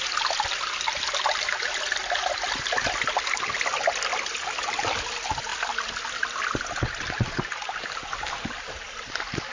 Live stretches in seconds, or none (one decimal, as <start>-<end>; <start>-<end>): 0.0-9.5